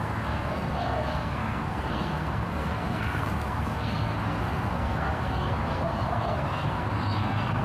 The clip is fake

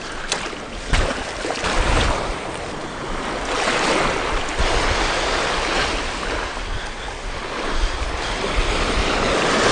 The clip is real